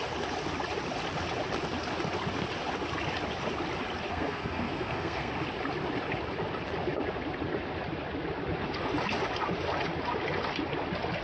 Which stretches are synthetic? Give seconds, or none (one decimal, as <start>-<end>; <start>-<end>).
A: 4.1-5.3